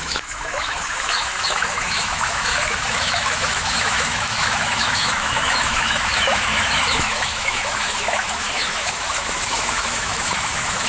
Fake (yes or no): yes